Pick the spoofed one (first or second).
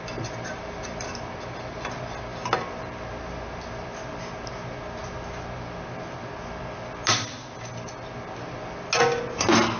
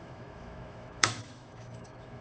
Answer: second